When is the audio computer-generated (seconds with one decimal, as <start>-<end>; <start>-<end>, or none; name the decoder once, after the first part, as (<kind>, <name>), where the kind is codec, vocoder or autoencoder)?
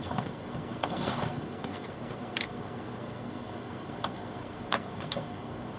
0.0-5.8 (codec, SNAC)